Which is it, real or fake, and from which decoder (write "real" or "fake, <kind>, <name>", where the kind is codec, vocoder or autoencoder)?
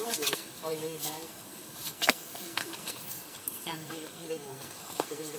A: fake, codec, SNAC